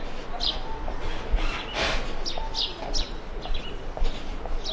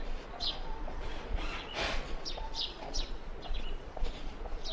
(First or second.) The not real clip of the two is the second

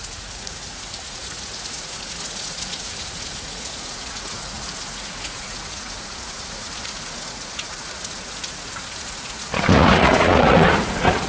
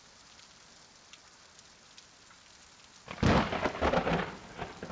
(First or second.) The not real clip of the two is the first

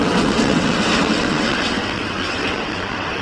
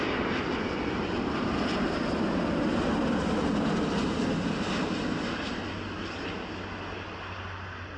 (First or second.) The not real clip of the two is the first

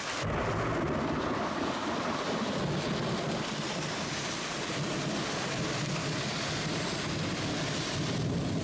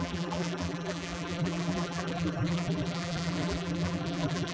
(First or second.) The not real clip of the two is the second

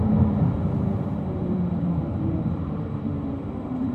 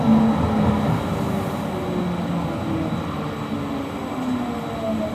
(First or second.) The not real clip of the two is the first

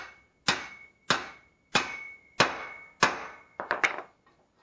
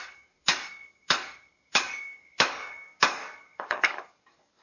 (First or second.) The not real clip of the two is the second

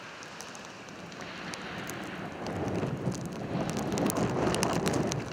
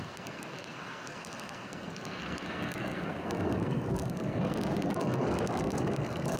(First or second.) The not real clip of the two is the second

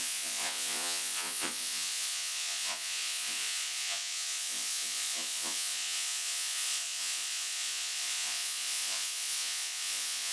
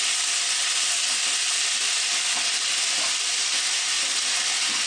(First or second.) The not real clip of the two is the first